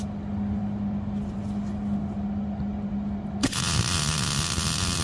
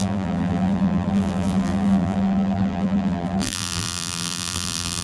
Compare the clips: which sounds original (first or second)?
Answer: first